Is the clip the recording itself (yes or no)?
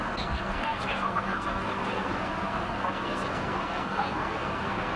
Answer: no